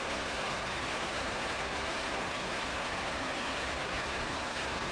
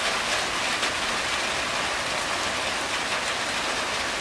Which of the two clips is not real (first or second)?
first